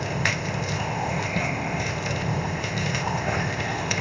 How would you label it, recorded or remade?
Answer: remade